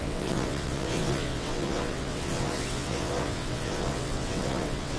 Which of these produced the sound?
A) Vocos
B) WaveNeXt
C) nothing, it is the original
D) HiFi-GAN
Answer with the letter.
B